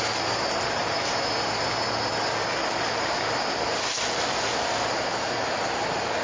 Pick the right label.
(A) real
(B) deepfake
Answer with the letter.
A